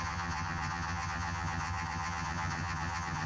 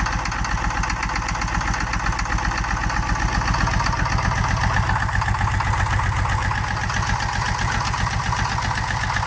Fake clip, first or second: first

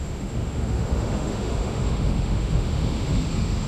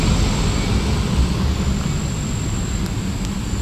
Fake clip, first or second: first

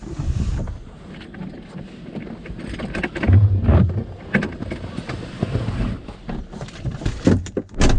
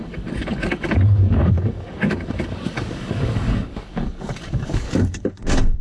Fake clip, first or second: second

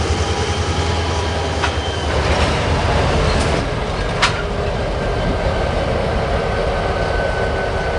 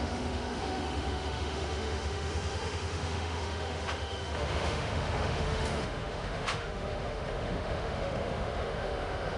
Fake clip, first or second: second